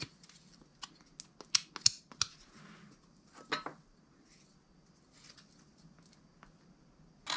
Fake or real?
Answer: real